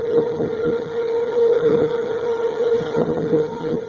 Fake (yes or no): yes